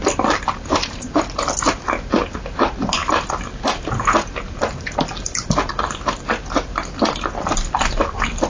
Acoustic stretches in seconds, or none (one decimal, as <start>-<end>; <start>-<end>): 0.0-8.5